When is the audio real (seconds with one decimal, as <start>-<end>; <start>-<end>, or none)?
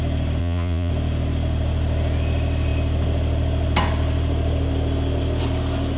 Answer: 0.0-0.4; 0.9-6.0